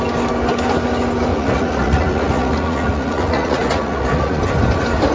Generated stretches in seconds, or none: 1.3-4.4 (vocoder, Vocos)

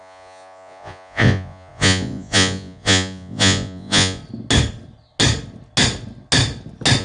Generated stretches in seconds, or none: 0.0-4.2 (vocoder, Vocos)

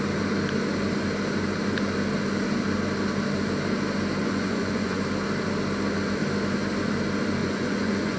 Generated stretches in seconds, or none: 4.2-5.0 (vocoder, Vocos); 7.4-8.2

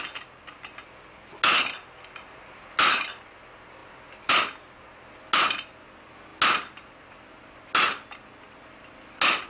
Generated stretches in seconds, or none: none

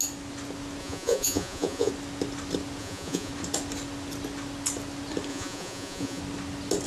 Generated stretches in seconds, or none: 0.8-1.9 (vocoder, Vocos); 2.8-3.3; 5.3-6.2